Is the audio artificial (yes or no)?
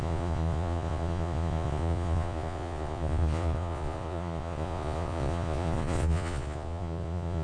yes